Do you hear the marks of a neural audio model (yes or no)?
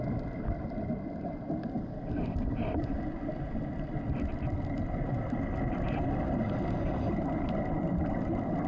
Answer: no